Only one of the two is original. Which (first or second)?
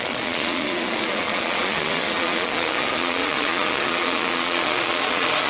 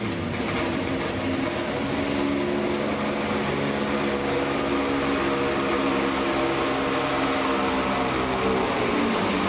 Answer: second